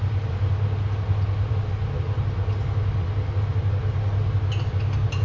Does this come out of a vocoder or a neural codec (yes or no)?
no